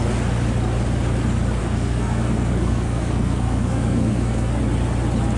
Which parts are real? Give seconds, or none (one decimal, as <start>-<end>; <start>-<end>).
0.0-1.6; 4.6-5.4